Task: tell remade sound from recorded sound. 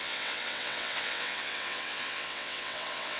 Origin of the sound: remade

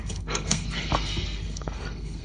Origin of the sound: remade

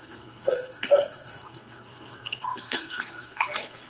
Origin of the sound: remade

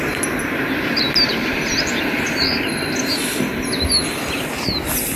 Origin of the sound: recorded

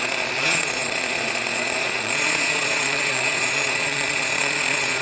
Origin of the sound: remade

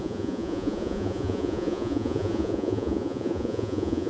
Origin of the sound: remade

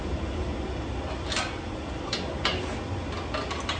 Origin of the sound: recorded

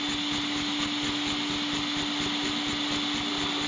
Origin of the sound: recorded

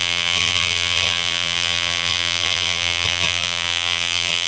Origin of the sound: remade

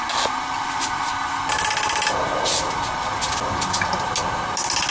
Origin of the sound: recorded